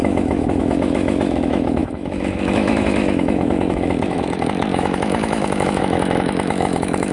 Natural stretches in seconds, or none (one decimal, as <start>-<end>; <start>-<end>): none